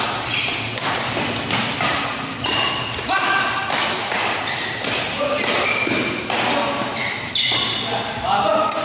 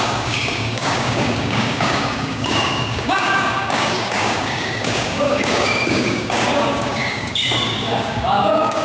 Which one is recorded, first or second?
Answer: first